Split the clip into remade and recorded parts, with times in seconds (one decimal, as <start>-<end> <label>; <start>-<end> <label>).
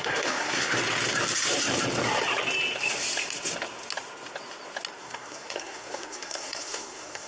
0.0-0.8 remade; 0.8-5.0 recorded; 5.0-7.3 remade